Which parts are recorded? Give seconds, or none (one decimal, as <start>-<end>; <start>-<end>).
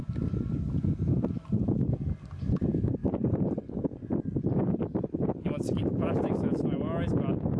0.0-3.0; 3.8-7.6